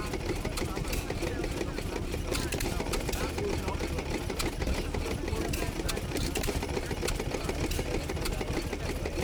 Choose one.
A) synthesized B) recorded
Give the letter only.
B